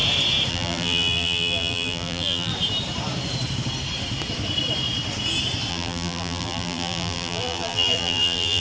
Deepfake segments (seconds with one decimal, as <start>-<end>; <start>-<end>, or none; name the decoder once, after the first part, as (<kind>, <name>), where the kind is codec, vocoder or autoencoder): 0.5-2.5 (vocoder, BigVGAN v2); 5.7-8.6